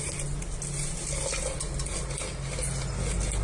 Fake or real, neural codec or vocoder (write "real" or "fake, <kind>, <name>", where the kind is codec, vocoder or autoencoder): real